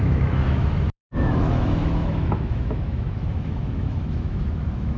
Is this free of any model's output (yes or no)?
no